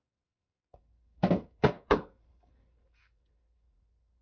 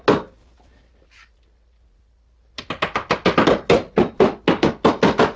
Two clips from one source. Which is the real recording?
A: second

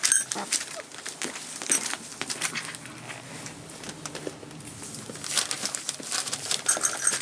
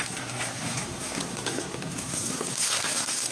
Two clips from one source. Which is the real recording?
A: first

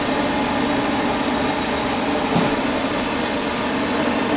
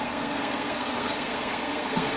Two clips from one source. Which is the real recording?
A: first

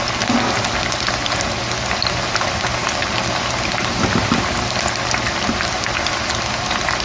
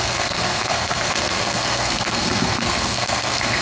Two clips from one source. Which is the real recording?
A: first